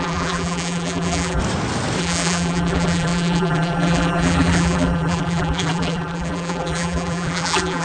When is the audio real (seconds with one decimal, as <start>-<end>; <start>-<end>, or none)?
1.4-2.0